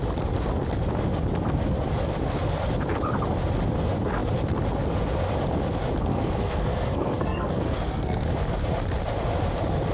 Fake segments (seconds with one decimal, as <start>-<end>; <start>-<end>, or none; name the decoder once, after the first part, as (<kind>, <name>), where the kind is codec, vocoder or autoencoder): 6.1-8.2 (codec, SNAC)